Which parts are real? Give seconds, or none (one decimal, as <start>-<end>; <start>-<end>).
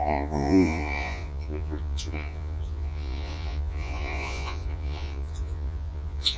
none